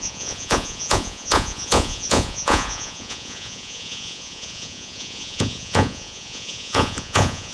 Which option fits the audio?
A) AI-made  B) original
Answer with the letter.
A